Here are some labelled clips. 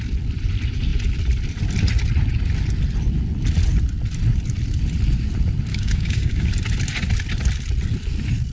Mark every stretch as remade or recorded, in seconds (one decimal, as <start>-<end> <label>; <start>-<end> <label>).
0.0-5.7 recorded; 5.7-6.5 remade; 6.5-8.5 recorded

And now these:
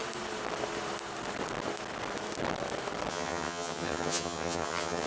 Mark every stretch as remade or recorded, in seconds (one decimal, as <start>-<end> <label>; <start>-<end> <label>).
0.0-3.1 recorded; 3.1-5.1 remade

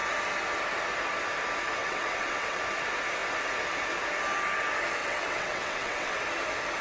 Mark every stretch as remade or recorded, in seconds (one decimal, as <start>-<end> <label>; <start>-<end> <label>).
0.0-1.8 recorded; 1.8-2.6 remade; 2.6-5.0 recorded; 5.0-6.1 remade; 6.1-6.8 recorded